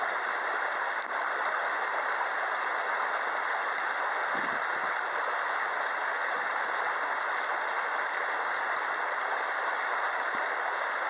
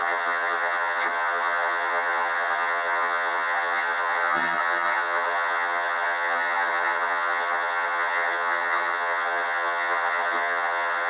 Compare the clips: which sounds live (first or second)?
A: first